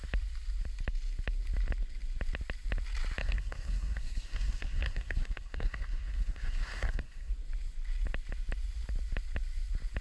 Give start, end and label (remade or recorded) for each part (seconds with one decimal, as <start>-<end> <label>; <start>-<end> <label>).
0.0-3.2 recorded; 3.2-7.3 remade; 7.3-10.0 recorded